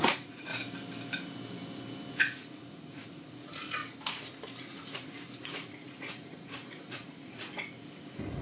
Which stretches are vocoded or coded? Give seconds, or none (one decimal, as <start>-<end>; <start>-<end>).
0.0-0.5; 2.2-3.8; 4.6-8.4